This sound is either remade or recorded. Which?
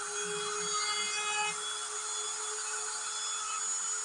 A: recorded